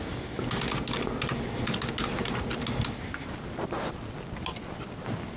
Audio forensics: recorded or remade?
recorded